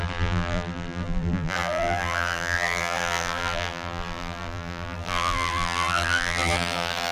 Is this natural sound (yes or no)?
no